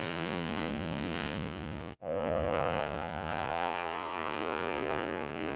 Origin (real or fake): fake